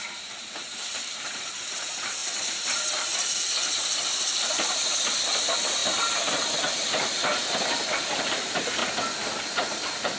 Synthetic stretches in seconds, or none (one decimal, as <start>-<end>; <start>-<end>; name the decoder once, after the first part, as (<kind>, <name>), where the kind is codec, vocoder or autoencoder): 0.0-5.8 (vocoder, BigVGAN v2); 8.2-8.8; 9.5-10.2